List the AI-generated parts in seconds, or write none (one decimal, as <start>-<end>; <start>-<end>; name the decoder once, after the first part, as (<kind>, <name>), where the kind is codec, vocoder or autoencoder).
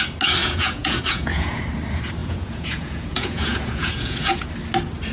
0.4-1.6 (vocoder, Vocos); 2.2-4.5